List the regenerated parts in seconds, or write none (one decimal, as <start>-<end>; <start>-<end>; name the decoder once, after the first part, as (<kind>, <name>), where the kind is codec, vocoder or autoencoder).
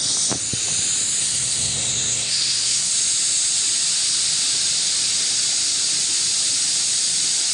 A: 1.2-2.9 (codec, SNAC)